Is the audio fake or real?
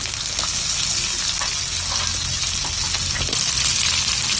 real